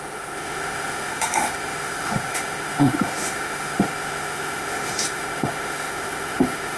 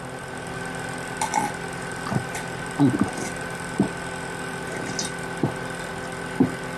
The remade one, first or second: first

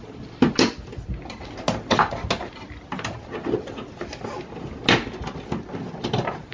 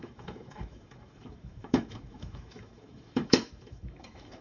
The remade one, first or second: second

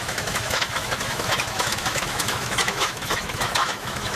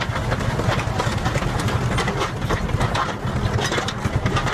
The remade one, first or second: first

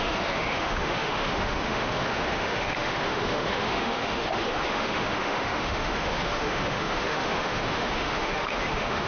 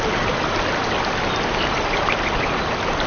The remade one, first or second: first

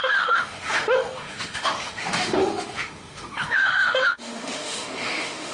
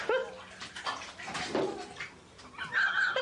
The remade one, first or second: first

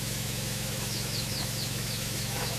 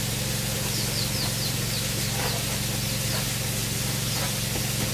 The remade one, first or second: first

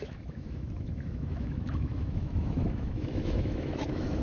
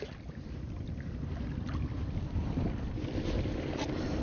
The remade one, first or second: first